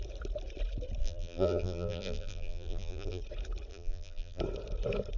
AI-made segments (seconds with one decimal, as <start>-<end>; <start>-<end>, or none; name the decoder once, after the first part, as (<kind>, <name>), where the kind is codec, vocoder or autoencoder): 1.0-3.2 (vocoder, BigVGAN v2); 3.7-4.4